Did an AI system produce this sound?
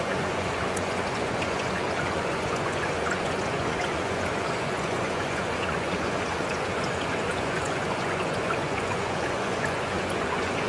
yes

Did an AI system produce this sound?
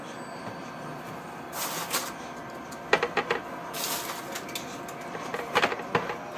no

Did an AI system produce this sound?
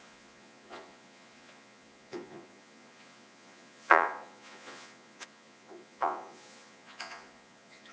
yes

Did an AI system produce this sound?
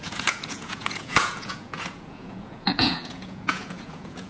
yes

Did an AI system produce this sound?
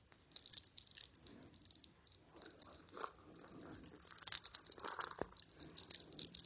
no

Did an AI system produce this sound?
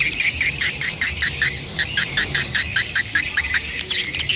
no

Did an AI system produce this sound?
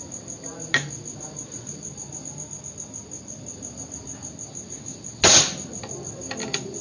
no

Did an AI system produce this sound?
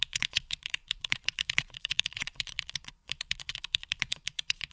yes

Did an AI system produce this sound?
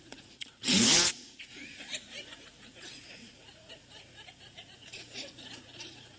yes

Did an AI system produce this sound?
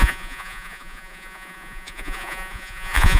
yes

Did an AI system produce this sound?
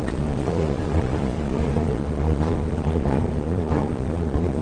yes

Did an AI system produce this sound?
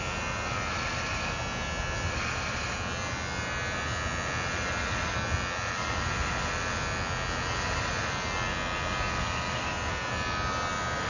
no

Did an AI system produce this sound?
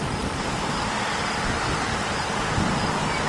no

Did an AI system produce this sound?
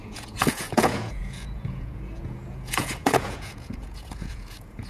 yes